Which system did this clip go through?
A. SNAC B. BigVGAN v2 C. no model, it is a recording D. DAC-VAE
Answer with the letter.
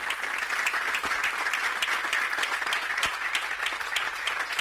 C